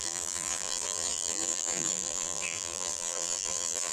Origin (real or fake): fake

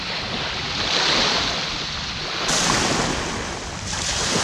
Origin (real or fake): real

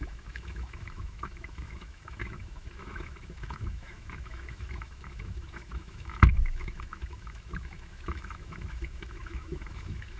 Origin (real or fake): fake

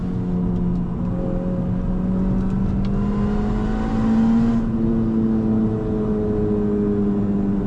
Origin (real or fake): real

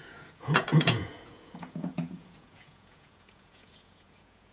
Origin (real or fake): fake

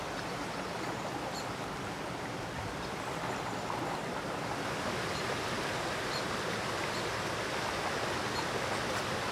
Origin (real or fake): real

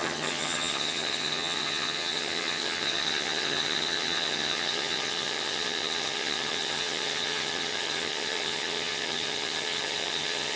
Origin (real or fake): fake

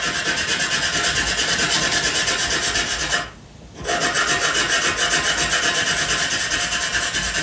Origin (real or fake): real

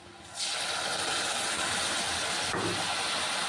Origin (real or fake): real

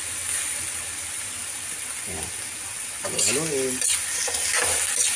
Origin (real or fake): real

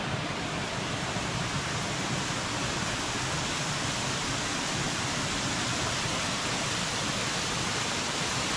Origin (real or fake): fake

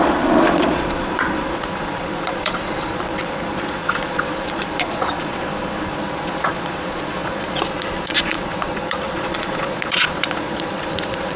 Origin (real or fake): fake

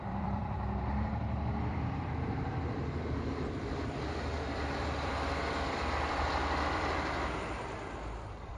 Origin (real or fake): fake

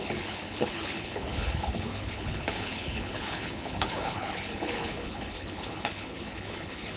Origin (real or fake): fake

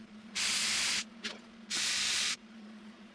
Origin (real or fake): fake